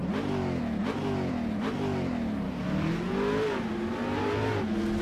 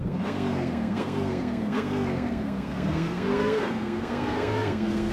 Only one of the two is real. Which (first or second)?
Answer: first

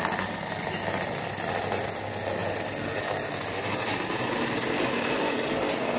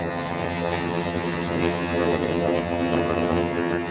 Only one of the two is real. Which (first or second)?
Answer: first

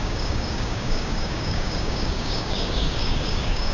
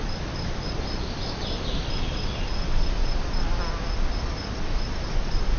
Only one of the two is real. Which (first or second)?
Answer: second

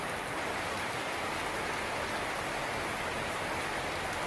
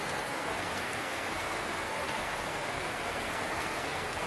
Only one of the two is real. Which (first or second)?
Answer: first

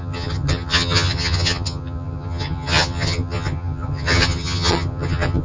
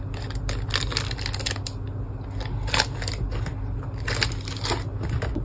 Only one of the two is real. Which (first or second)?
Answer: second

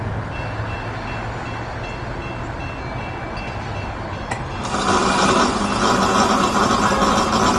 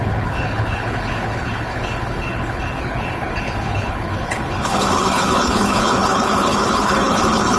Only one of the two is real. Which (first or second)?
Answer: first